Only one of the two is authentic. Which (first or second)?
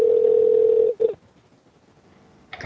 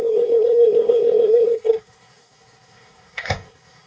first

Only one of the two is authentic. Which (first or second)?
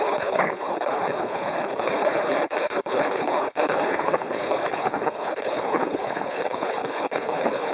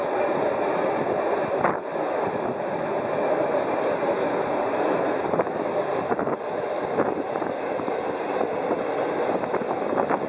second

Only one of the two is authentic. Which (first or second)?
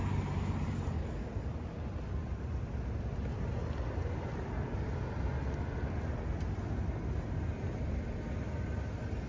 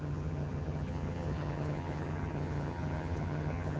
first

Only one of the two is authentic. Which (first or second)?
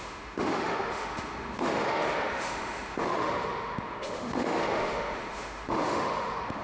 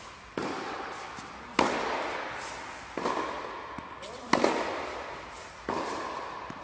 second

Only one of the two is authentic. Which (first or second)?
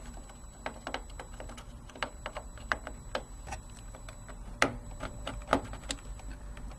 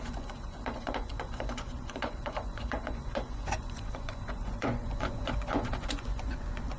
first